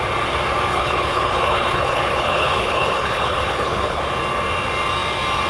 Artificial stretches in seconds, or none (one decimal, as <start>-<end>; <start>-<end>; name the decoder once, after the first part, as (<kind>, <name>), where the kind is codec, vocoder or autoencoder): 0.7-4.0 (codec, HILCodec)